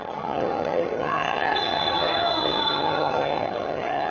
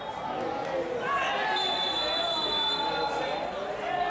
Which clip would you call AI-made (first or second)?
first